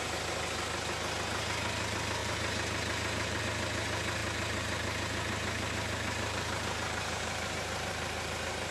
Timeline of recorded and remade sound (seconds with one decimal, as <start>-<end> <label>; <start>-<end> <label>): 0.0-2.2 recorded; 2.2-3.4 remade; 3.4-4.2 recorded; 4.2-8.7 remade